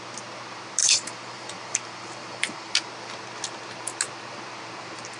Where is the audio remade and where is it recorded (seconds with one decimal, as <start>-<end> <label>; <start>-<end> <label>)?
0.0-0.8 recorded; 0.8-2.7 remade; 2.7-5.2 recorded